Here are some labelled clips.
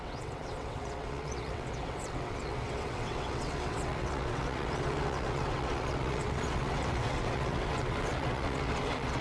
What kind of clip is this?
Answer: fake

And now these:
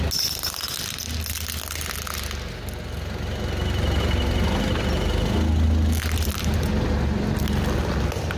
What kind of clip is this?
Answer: real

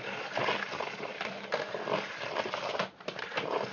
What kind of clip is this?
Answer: real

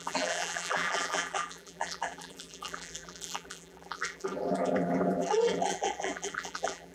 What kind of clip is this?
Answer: fake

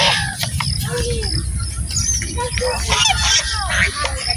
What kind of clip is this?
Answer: real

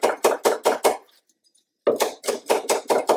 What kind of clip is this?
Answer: real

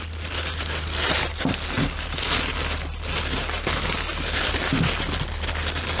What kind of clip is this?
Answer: real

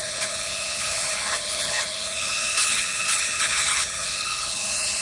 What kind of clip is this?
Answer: fake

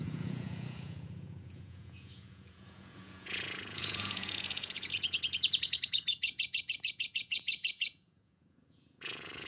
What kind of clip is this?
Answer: fake